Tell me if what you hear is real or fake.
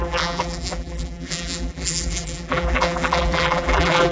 fake